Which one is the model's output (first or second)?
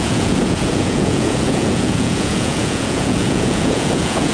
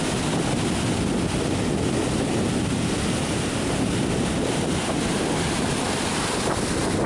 first